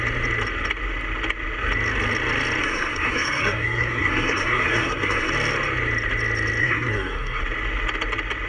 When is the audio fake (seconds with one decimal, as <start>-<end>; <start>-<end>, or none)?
2.6-5.3; 6.6-7.4

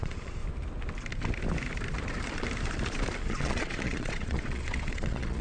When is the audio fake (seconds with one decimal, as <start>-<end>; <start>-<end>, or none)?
0.0-0.4; 3.3-5.4

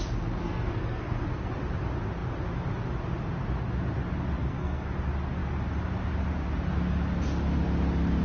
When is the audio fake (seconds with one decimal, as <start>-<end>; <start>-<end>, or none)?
0.4-1.5; 4.4-4.9

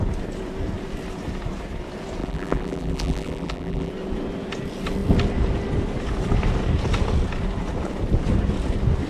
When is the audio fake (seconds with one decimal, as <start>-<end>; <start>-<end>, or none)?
2.2-3.9